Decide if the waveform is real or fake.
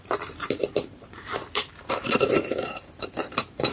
fake